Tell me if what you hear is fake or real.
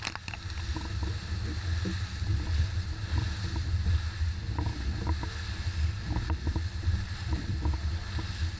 real